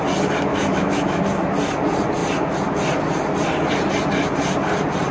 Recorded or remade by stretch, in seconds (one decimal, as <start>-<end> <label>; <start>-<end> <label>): 0.0-0.5 recorded; 0.5-1.2 remade; 1.2-5.1 recorded